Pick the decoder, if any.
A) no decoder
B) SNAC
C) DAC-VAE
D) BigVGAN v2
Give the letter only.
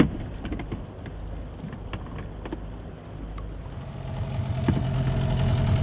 A